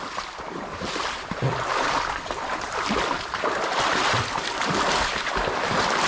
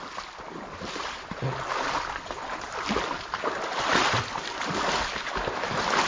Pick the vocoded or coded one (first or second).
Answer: first